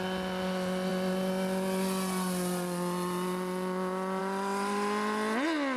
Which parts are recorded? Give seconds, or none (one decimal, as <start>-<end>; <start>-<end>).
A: 0.0-5.8